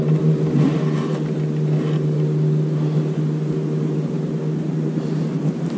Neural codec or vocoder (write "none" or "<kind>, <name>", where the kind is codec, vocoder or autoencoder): none